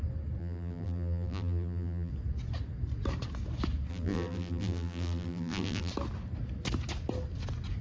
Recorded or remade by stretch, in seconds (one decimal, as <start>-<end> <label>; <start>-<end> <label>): 0.0-0.4 recorded; 0.4-2.1 remade; 2.1-3.9 recorded; 3.9-5.9 remade; 5.9-7.8 recorded